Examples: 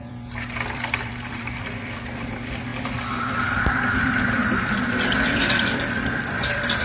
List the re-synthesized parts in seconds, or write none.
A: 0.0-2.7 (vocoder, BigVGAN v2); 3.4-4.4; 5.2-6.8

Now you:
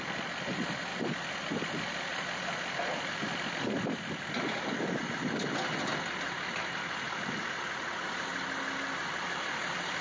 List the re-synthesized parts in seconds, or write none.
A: none

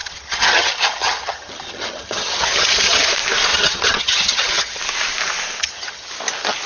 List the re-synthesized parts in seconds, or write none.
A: 0.0-3.1 (vocoder, HiFi-GAN); 3.5-4.8; 5.6-6.1

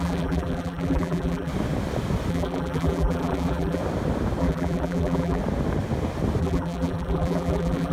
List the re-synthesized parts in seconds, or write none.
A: 0.0-1.5 (vocoder, BigVGAN v2); 2.3-3.8; 4.4-5.4; 6.4-7.9

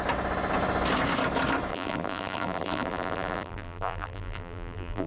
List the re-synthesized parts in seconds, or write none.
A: 1.7-5.1 (vocoder, BigVGAN v2)

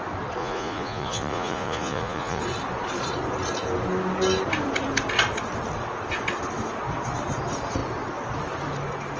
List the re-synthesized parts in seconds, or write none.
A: 0.4-2.4 (vocoder, Vocos)

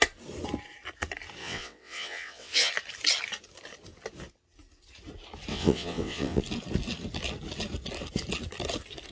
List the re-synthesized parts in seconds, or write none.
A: 1.4-2.7 (vocoder, WaveNeXt); 5.5-6.4